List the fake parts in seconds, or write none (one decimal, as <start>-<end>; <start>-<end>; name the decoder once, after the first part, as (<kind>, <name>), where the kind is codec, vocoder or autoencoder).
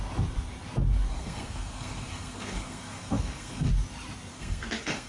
1.1-3.7 (codec, SNAC); 4.3-5.1